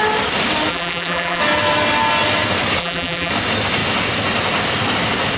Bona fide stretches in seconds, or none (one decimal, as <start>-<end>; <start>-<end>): 0.0-0.7; 1.4-2.8; 3.3-5.4